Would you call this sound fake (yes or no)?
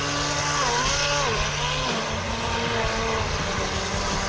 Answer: no